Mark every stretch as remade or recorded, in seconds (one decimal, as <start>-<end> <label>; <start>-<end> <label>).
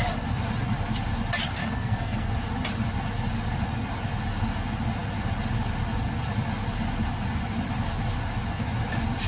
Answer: 0.0-1.6 recorded; 1.6-2.3 remade; 2.3-9.3 recorded